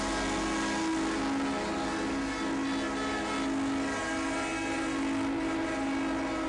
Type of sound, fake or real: real